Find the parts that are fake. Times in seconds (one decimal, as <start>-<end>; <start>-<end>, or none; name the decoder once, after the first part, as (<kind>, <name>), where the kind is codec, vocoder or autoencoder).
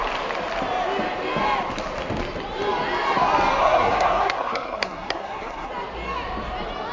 3.6-5.7 (codec, SNAC)